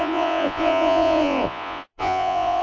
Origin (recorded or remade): remade